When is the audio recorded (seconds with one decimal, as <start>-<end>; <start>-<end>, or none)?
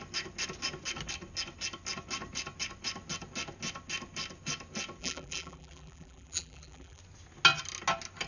0.0-5.0; 7.0-8.3